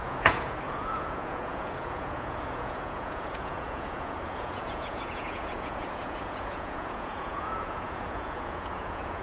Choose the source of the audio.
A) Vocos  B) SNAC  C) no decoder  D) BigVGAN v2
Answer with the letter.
A